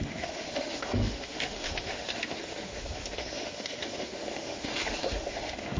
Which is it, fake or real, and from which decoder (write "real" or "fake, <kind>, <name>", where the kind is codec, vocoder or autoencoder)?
fake, autoencoder, DAC-VAE